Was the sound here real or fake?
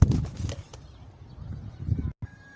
real